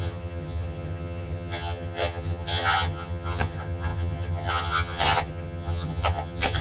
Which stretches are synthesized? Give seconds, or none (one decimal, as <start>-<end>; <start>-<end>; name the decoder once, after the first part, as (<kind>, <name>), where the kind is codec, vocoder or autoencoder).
0.0-6.6 (vocoder, HiFi-GAN)